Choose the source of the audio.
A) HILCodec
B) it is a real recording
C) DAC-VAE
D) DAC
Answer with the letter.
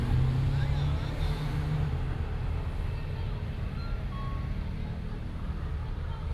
B